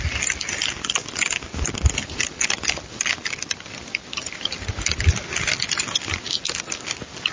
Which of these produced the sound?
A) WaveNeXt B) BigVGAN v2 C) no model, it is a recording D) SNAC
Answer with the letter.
C